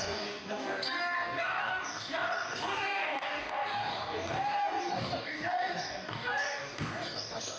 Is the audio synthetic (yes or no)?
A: yes